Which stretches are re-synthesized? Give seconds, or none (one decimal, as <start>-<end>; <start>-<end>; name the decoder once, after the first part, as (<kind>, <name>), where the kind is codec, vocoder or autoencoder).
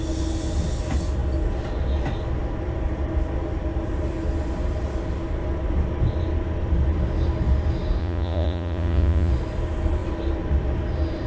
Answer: 8.0-9.3 (vocoder, Vocos)